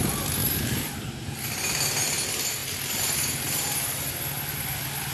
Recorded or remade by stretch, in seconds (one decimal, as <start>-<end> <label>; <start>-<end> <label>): 0.0-0.4 recorded; 0.4-1.2 remade; 1.2-2.6 recorded; 2.6-4.1 remade; 4.1-5.1 recorded